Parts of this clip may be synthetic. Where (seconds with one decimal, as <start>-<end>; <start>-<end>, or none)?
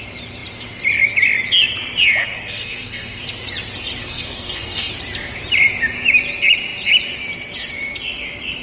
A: 2.2-3.2; 4.0-4.9